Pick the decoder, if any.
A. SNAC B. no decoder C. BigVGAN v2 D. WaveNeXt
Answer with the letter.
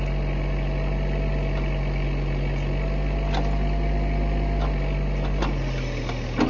B